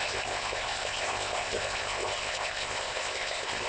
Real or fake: fake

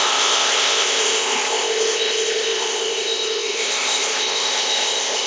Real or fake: fake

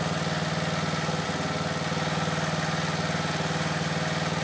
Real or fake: real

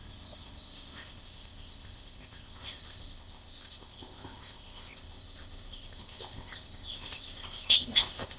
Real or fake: fake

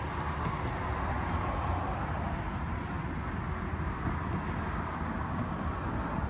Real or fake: real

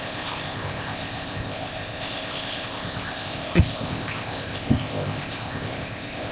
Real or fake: fake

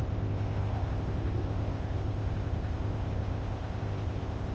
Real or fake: fake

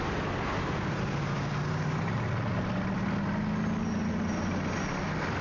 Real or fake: real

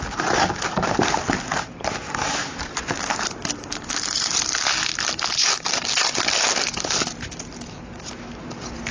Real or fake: real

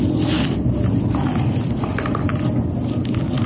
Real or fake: real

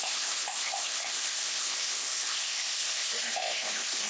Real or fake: fake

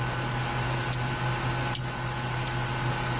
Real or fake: real